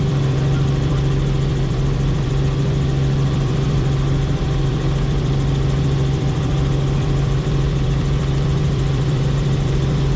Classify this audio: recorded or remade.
remade